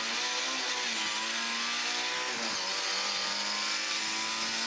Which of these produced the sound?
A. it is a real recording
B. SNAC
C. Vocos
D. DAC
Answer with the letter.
A